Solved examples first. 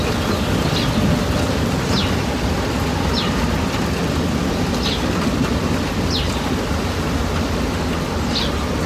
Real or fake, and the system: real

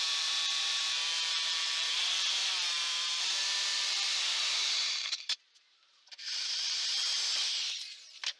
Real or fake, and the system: fake, vocoder, BigVGAN v2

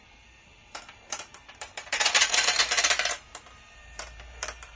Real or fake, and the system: fake, vocoder, BigVGAN v2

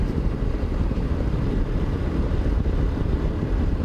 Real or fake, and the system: fake, vocoder, BigVGAN v2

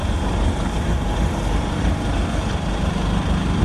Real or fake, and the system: fake, vocoder, BigVGAN v2